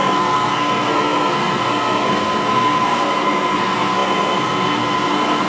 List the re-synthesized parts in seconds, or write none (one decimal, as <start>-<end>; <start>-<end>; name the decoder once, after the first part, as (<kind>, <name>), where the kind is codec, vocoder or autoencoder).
0.0-5.5 (codec, SNAC)